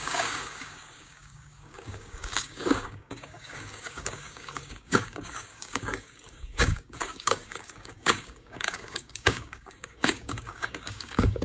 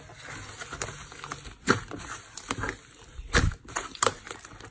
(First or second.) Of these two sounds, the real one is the second